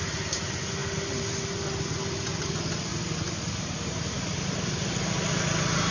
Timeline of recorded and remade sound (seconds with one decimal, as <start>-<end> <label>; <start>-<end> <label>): 0.0-5.9 recorded